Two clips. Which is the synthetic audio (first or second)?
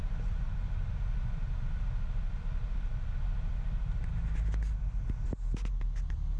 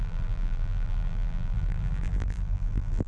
second